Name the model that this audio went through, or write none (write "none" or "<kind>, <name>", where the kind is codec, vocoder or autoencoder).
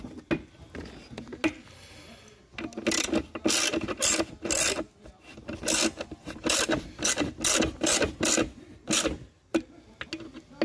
none